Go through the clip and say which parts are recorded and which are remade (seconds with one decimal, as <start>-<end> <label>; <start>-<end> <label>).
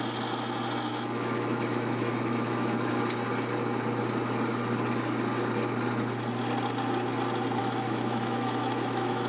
0.0-0.9 recorded; 0.9-3.0 remade; 3.0-7.6 recorded; 7.6-9.3 remade